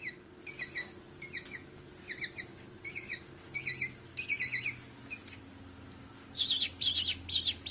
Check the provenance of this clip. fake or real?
real